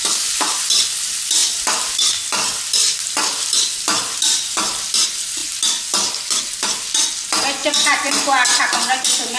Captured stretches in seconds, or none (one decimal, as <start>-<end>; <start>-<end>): 0.0-9.4